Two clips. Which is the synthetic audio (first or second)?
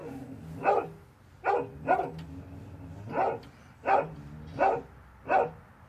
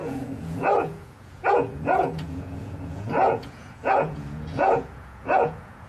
second